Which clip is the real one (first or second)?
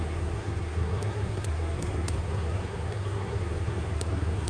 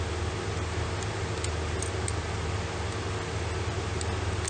second